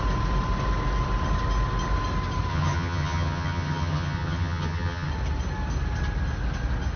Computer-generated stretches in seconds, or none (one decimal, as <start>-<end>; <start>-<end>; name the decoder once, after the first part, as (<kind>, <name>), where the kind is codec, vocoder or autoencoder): 2.5-5.1 (vocoder, HiFi-GAN)